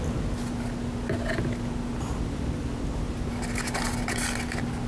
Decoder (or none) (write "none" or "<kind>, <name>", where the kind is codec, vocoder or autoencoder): none